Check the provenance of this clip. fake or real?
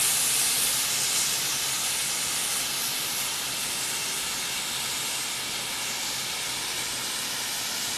real